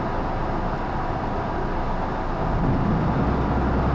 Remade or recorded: recorded